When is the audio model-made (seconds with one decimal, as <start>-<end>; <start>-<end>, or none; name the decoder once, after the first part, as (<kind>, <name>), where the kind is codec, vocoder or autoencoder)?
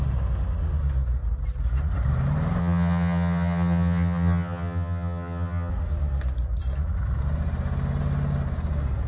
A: 2.6-5.7 (vocoder, HiFi-GAN)